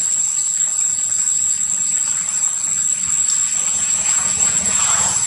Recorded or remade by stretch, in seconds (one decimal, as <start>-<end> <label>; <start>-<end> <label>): 0.0-3.7 recorded; 3.7-5.3 remade